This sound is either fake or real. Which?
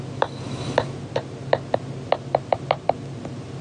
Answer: real